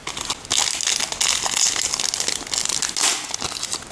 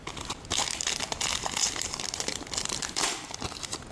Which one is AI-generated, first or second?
second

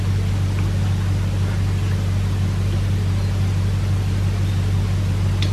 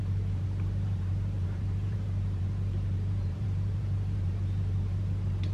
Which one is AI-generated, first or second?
second